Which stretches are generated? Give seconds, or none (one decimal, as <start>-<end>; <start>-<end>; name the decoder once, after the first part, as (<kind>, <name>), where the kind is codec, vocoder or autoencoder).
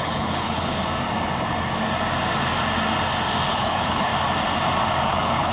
0.0-0.8 (codec, HILCodec); 3.5-4.1; 5.0-5.5